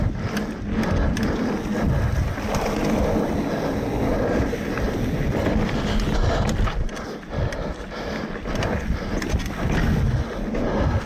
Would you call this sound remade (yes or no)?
no